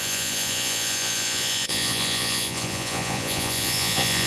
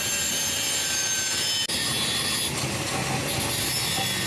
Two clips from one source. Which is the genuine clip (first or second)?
second